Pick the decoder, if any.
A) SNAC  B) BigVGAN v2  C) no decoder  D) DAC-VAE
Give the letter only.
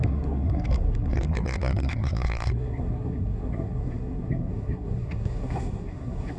A